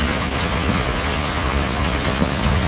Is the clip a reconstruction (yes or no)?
yes